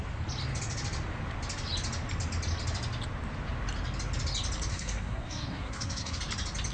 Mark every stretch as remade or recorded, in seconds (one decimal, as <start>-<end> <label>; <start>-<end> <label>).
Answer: 0.0-4.7 recorded; 4.7-6.2 remade; 6.2-6.7 recorded